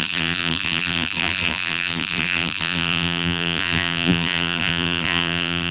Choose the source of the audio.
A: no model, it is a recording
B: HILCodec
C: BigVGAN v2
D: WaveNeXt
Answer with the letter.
C